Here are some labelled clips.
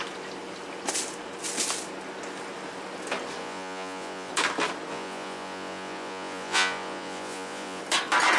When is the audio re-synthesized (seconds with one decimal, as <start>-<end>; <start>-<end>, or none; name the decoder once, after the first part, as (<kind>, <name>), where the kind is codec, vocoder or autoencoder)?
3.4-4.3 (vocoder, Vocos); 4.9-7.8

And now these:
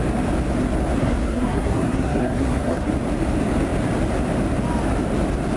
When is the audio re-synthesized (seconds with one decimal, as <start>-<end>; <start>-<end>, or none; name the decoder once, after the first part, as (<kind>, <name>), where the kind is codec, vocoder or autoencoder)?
1.0-2.9 (codec, SNAC)

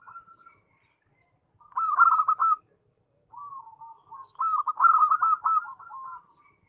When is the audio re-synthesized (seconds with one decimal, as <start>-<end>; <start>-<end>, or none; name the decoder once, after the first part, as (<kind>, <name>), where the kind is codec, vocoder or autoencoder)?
2.4-4.9 (codec, DAC)

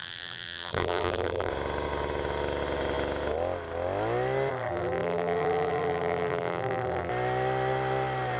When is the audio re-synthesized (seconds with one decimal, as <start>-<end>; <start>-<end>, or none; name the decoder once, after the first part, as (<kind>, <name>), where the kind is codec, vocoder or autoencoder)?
0.0-1.5 (vocoder, BigVGAN v2); 4.5-7.1

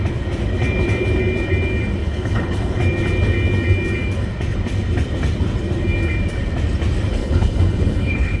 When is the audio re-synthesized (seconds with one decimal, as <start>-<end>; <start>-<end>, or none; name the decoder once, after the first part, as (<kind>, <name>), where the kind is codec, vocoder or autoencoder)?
2.0-2.8 (codec, HILCodec); 7.2-8.4

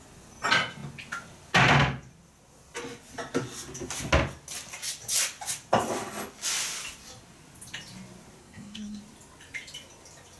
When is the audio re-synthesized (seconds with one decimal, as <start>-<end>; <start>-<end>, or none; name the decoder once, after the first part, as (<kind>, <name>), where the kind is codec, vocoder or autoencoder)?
8.4-9.0 (codec, SNAC)